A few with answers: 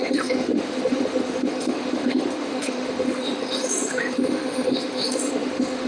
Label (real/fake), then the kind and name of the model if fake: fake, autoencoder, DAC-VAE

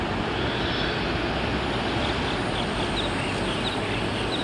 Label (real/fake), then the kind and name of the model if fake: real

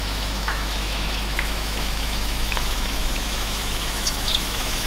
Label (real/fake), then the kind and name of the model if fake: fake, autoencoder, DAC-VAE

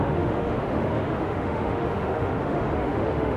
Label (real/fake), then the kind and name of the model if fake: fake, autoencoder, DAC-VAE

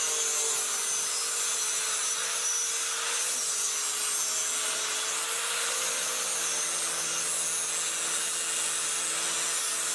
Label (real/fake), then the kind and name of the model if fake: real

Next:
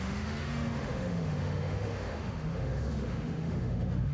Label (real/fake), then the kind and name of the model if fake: fake, autoencoder, DAC-VAE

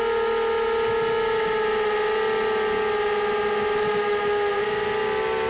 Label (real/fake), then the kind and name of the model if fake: real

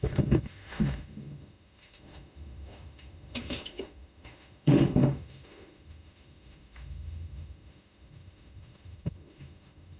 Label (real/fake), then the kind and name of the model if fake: fake, autoencoder, DAC-VAE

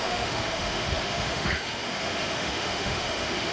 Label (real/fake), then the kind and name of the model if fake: fake, autoencoder, DAC-VAE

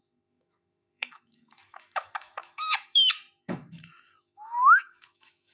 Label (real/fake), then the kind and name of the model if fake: fake, autoencoder, DAC-VAE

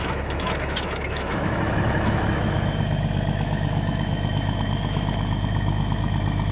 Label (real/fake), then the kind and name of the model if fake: fake, autoencoder, DAC-VAE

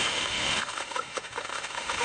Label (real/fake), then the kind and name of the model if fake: fake, autoencoder, DAC-VAE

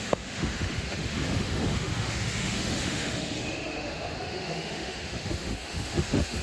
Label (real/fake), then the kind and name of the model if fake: fake, autoencoder, DAC-VAE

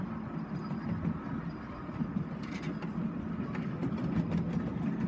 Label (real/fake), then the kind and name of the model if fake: real